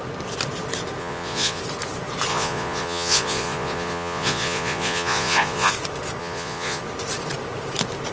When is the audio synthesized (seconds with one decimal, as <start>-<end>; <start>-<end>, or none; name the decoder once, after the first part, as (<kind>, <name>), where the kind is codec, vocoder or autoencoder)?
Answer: 1.0-1.6 (vocoder, Vocos); 2.3-5.7; 6.2-6.8